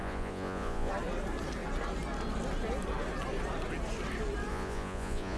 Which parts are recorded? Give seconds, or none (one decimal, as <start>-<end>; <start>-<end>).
0.9-4.5